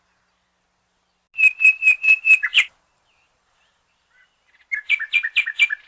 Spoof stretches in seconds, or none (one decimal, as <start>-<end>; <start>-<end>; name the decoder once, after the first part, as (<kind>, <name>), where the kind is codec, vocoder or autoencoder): 1.6-4.4 (vocoder, BigVGAN v2)